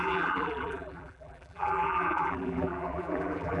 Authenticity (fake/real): fake